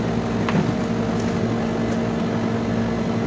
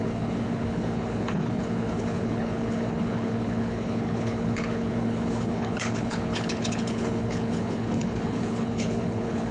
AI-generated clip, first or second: second